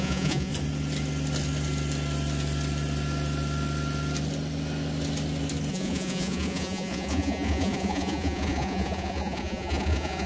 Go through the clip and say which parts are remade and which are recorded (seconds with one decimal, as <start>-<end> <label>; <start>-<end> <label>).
0.0-0.5 remade; 0.5-5.7 recorded; 5.7-10.3 remade